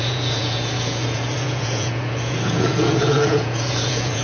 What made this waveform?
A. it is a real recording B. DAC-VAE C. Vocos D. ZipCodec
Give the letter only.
C